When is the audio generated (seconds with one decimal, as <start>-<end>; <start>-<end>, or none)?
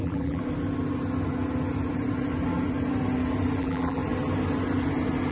0.0-0.4; 3.6-4.0